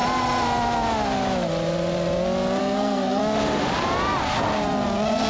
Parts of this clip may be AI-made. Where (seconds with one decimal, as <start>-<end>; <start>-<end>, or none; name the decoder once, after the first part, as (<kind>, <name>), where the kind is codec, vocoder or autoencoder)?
2.6-3.2 (codec, SNAC)